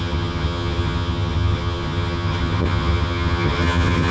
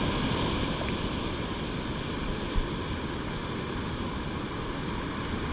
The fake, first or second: first